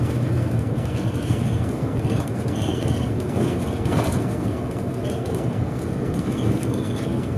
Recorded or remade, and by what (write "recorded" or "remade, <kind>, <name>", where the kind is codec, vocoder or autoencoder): remade, codec, SNAC